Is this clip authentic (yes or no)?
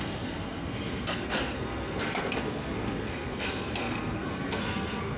no